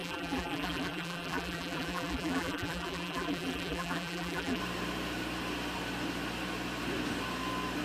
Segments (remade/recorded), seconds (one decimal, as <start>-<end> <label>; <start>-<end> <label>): 0.0-4.6 remade; 4.6-7.8 recorded